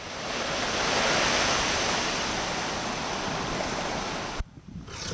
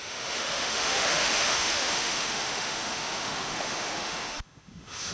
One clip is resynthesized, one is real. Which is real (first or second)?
first